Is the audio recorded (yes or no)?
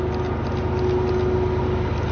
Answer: yes